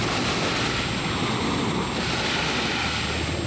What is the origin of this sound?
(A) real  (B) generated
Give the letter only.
A